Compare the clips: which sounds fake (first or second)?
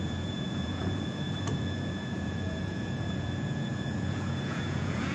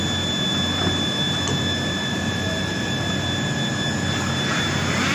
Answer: first